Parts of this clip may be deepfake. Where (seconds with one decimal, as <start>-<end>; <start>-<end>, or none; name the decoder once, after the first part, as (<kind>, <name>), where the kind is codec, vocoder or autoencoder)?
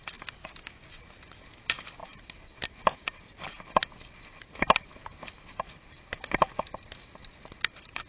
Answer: 0.4-0.9 (codec, DAC)